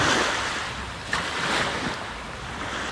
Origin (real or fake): real